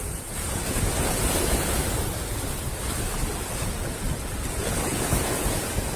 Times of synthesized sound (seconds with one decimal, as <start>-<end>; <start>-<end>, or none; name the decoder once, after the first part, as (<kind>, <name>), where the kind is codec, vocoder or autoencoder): 0.0-1.8 (vocoder, Vocos); 4.5-6.0